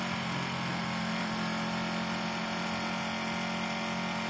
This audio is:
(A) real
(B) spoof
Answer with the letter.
A